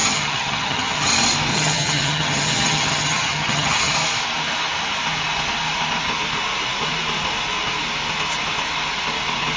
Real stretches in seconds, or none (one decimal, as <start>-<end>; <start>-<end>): 1.1-1.5; 3.9-9.6